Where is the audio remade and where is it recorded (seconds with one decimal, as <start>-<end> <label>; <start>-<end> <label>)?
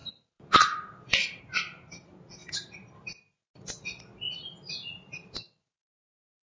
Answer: 0.0-1.4 remade; 1.4-2.4 recorded; 2.4-6.4 remade